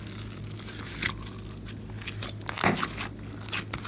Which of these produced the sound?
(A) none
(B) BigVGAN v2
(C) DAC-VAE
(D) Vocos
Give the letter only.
A